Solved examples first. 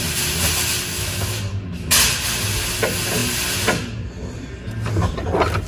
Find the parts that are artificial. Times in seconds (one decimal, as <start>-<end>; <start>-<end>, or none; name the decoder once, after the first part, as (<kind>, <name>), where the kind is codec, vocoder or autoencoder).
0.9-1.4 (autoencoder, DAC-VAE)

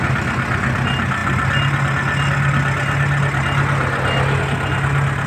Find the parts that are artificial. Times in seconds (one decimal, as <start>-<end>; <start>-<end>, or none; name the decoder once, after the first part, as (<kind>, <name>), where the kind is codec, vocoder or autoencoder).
none

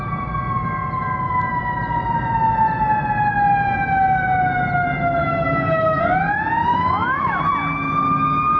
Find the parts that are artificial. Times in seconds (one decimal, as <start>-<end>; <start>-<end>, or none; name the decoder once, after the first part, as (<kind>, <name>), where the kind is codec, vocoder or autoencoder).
5.2-6.0 (autoencoder, DAC-VAE); 6.7-7.4

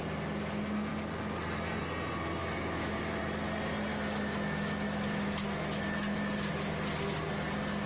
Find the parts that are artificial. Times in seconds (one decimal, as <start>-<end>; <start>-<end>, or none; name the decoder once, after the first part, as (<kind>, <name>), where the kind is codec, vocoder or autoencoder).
2.4-3.2 (autoencoder, DAC-VAE); 3.9-6.5